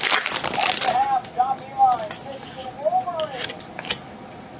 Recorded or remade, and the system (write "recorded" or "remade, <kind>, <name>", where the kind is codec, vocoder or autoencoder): recorded